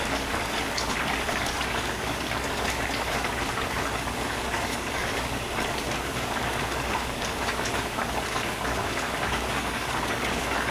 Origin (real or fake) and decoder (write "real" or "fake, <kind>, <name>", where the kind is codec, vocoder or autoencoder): fake, codec, DAC